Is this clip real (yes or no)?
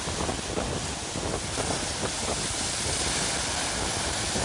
yes